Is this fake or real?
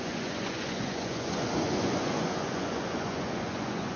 fake